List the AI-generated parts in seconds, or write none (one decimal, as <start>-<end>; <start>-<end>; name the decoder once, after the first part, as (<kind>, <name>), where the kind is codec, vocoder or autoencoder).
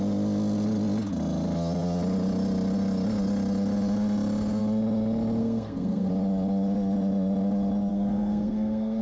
5.4-6.1 (codec, SNAC); 7.9-9.0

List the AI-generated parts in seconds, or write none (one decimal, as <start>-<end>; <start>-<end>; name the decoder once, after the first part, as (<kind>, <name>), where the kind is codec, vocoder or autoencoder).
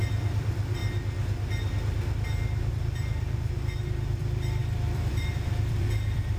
0.0-0.8 (vocoder, BigVGAN v2); 2.7-6.4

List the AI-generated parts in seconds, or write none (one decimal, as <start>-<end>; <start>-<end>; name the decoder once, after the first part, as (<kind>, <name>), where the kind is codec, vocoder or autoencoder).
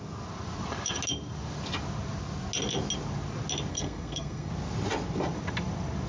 3.7-4.5 (codec, SNAC)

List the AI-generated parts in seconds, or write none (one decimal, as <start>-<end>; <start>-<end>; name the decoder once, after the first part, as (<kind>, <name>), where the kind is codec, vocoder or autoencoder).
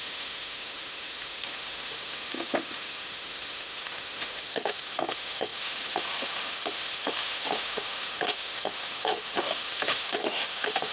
0.0-10.9 (autoencoder, DAC-VAE)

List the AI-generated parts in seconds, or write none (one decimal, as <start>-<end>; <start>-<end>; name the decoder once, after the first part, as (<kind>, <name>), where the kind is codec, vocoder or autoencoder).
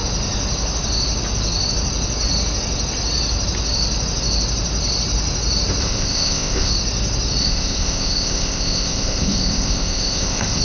5.8-6.7 (codec, ZipCodec); 7.4-10.6